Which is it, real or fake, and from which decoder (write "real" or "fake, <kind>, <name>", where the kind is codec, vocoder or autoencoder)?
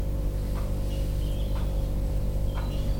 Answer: real